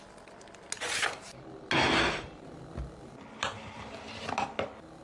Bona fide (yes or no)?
yes